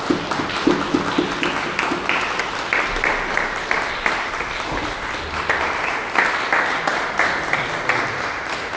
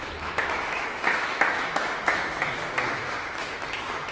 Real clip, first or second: first